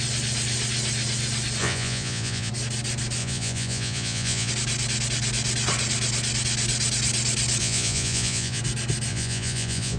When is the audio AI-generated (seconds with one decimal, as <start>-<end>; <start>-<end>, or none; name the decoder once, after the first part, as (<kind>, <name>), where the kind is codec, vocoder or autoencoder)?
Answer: 1.6-2.5 (vocoder, Vocos); 3.2-4.5; 7.6-8.6; 9.1-10.0